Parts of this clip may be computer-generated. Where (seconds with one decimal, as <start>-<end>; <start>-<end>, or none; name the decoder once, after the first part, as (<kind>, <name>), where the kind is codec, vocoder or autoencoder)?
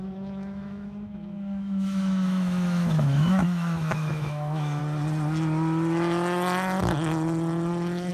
0.0-4.8 (autoencoder, DAC-VAE)